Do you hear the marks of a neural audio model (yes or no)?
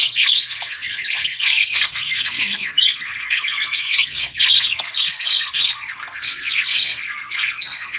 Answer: yes